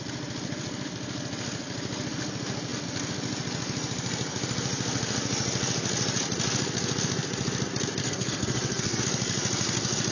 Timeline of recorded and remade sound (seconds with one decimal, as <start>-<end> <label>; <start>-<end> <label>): 0.0-8.0 recorded; 8.0-9.0 remade; 9.0-10.1 recorded